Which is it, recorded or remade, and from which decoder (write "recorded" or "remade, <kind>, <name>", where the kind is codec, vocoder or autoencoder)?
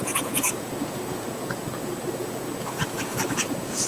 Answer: remade, vocoder, Vocos